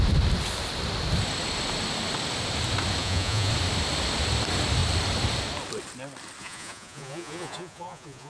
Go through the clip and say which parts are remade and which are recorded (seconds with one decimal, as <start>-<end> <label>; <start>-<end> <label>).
0.0-3.0 recorded; 3.0-3.5 remade; 3.5-6.4 recorded; 6.4-8.3 remade